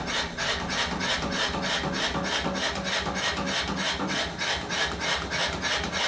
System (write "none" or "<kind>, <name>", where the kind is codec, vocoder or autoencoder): none